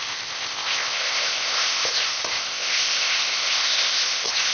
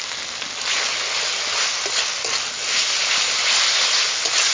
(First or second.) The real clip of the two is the second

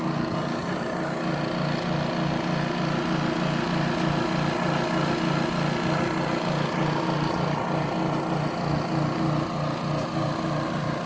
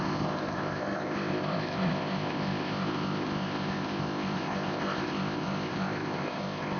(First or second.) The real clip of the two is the first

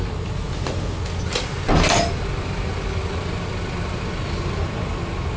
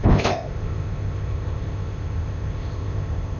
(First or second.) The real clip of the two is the first